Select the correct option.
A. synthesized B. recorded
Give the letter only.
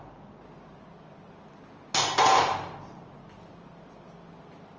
B